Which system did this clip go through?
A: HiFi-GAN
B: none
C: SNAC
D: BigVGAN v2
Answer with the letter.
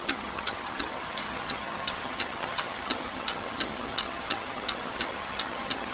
A